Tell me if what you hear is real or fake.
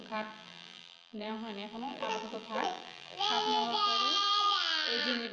fake